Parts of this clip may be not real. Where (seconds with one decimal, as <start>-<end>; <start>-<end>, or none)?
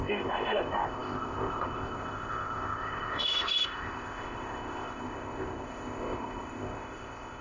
0.0-7.4